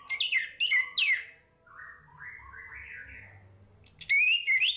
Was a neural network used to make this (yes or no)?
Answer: no